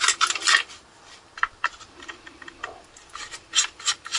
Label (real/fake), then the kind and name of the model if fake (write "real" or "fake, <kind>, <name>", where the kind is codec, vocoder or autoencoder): real